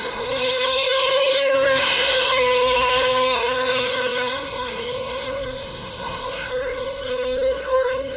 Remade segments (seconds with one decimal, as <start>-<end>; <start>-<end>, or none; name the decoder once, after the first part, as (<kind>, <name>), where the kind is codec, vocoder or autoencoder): 0.0-8.2 (codec, SNAC)